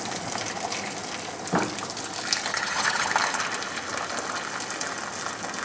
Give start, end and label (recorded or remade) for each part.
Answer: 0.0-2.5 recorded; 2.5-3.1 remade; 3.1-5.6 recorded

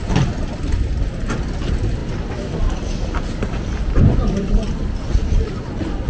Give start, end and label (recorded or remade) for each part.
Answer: 0.0-6.1 recorded

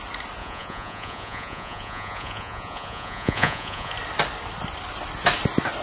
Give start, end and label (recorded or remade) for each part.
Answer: 0.0-0.4 recorded; 0.4-3.9 remade; 3.9-5.8 recorded

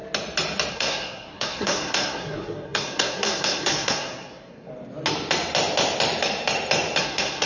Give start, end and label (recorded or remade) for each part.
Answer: 0.0-0.7 recorded; 0.7-4.7 remade; 4.7-7.0 recorded; 7.0-7.5 remade

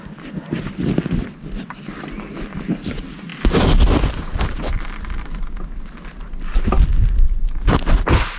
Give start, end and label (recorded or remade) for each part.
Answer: 0.0-3.3 remade; 3.3-4.3 recorded; 4.3-8.4 remade

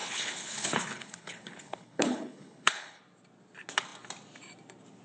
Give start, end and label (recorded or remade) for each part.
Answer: 0.0-3.0 remade; 3.0-5.0 recorded